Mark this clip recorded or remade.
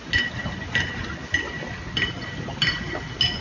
recorded